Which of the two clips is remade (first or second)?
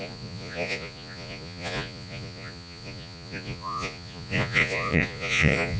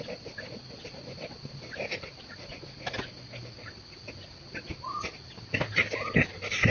first